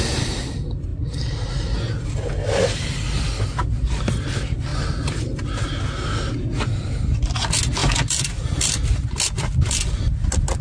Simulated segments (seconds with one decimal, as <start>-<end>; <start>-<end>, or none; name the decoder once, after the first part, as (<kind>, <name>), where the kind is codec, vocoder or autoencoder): 6.5-7.0 (vocoder, BigVGAN v2)